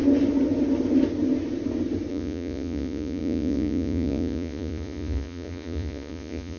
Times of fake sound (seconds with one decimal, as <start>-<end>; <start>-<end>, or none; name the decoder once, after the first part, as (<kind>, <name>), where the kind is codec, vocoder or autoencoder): 2.1-6.6 (vocoder, Vocos)

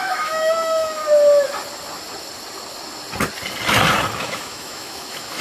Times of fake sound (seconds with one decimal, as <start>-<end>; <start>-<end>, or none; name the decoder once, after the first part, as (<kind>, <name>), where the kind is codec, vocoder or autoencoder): 0.0-1.0 (autoencoder, DAC-VAE); 4.2-5.4

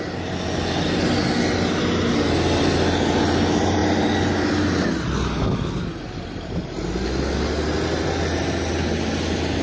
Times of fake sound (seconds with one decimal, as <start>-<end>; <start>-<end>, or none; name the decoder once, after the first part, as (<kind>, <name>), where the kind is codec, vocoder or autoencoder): none

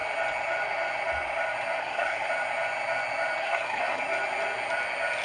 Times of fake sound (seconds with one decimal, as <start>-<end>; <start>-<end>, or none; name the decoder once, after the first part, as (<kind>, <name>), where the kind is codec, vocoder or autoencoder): 1.8-2.3 (codec, SNAC); 3.4-4.0

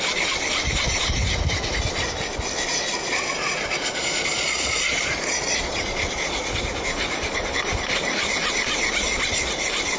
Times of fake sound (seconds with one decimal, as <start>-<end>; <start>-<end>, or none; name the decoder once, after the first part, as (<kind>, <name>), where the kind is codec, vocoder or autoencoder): 3.0-6.6 (vocoder, Vocos)

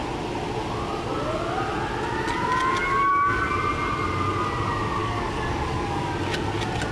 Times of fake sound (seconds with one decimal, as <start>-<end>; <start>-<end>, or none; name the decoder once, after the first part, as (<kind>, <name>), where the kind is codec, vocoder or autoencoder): 2.8-3.5 (codec, DAC); 5.0-6.1

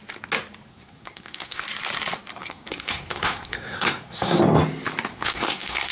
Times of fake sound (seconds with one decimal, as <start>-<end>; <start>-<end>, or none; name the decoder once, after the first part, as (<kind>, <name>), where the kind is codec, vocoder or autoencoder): 0.7-1.6 (codec, SNAC); 2.4-4.4; 5.1-5.9